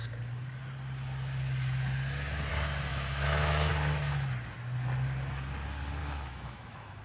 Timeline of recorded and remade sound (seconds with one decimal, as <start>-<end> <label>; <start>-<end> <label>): 0.0-2.9 recorded; 2.9-3.7 remade; 3.7-6.0 recorded; 6.0-7.0 remade